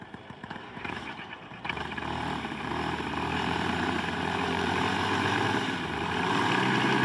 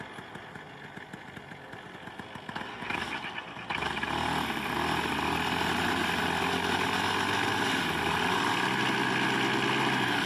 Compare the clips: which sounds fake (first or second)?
first